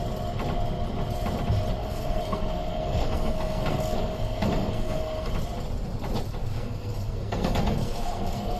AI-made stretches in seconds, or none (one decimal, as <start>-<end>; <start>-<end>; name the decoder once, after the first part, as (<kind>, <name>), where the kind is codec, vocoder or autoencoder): 1.8-5.3 (codec, SNAC); 6.4-8.6